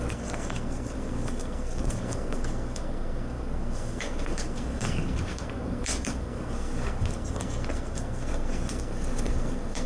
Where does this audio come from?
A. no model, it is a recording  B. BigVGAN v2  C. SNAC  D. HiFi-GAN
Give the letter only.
C